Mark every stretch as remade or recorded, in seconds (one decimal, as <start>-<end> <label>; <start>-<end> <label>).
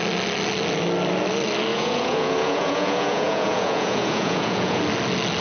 0.0-1.7 recorded; 1.7-4.8 remade; 4.8-5.4 recorded